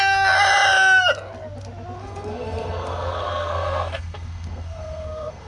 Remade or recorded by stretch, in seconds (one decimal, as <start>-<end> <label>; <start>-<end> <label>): 0.0-2.0 recorded; 2.0-5.5 remade